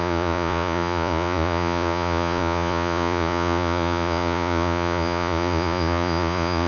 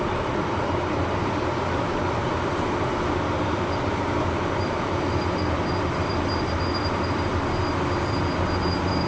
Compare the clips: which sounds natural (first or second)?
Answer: second